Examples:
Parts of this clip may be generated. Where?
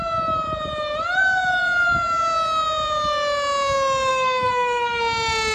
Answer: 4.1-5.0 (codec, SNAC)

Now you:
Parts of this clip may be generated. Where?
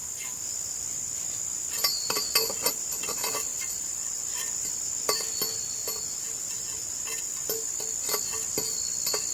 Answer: none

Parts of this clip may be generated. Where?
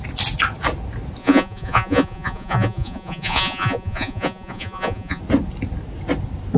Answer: 1.2-5.2 (vocoder, Vocos)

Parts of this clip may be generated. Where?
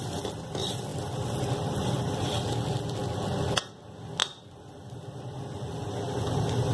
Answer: none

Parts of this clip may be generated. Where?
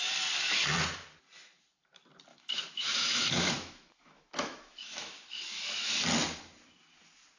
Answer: 2.3-5.9 (autoencoder, DAC-VAE)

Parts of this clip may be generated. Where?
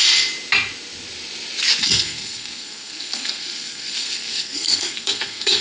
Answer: 1.8-5.6 (codec, SNAC)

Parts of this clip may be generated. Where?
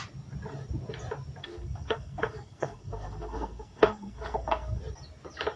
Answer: 1.4-4.8 (codec, SNAC)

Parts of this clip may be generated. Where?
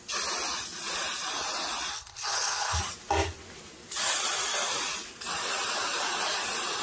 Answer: 1.9-2.8 (codec, HILCodec)